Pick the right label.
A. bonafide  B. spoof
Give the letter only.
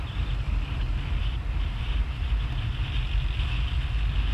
A